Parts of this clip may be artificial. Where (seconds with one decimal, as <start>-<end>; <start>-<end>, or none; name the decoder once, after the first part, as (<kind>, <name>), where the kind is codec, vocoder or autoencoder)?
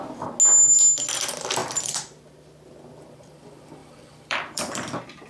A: 1.6-2.7 (vocoder, BigVGAN v2); 3.8-5.3